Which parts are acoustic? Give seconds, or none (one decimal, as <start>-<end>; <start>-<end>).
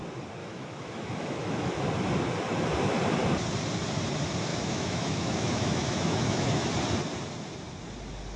0.0-0.4; 1.8-4.5; 6.7-8.4